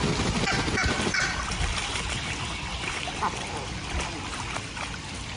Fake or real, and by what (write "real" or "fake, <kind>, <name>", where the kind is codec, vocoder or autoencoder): real